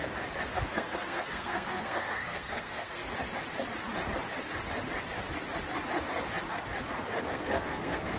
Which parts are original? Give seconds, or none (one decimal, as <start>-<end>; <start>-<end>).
0.0-0.6; 3.0-7.3